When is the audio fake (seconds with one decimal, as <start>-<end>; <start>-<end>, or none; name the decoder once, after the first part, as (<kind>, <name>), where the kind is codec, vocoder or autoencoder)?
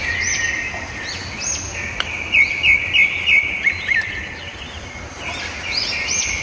none